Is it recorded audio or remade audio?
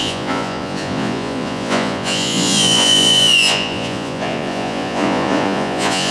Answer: remade